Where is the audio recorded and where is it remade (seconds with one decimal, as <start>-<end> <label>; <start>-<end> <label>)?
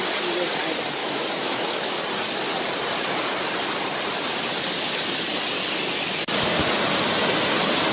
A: 0.0-1.0 recorded; 1.0-2.0 remade; 2.0-7.9 recorded